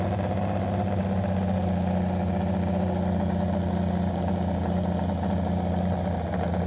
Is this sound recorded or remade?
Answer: recorded